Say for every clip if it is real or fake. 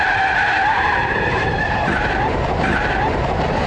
fake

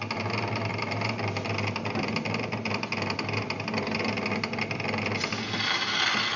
real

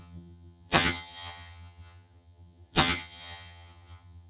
fake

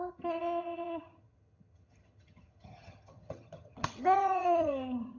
fake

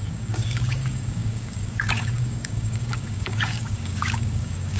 fake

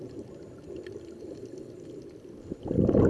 real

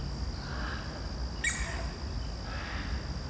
real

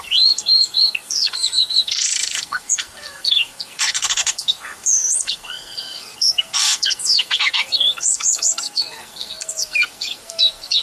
fake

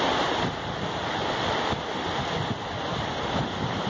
real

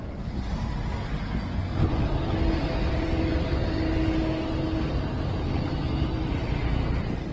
real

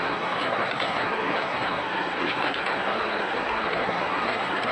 fake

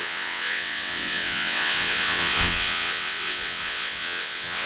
fake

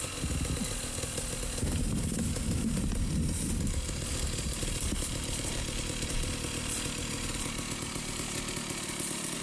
real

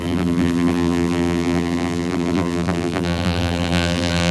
fake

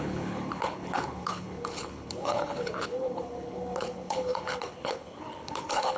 fake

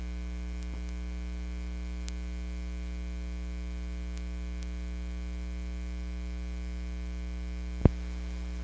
real